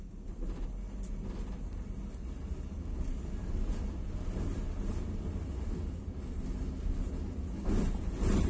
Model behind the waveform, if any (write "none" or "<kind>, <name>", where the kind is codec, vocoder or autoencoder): none